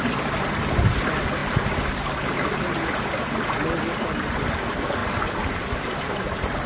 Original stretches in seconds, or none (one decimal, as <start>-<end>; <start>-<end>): 0.0-6.7